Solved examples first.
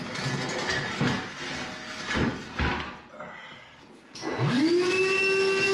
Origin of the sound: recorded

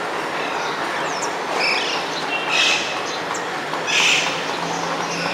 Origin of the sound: recorded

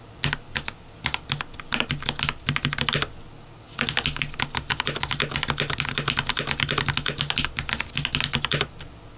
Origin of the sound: recorded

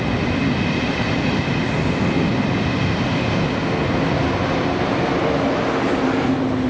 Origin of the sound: recorded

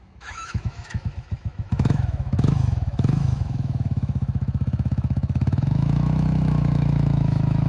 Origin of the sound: remade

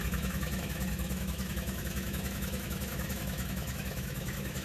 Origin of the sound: remade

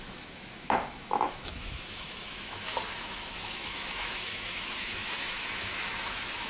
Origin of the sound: remade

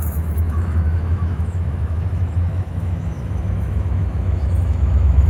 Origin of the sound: remade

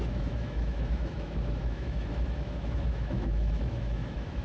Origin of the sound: remade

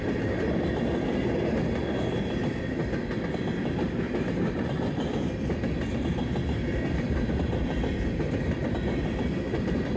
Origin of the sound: recorded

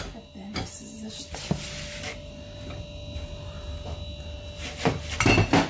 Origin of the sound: recorded